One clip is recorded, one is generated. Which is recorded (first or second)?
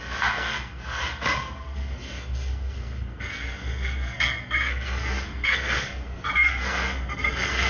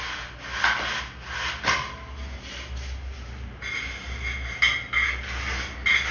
second